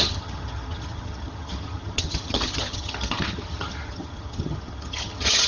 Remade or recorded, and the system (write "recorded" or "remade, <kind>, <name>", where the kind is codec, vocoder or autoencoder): remade, vocoder, HiFi-GAN